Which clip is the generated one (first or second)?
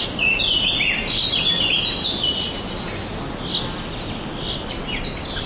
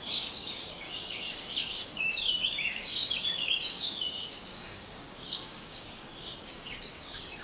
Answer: second